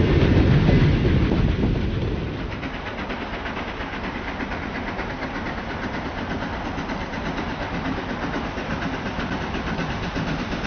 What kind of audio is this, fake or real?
real